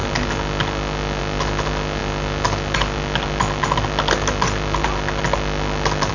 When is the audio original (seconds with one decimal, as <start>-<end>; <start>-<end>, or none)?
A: 0.0-6.1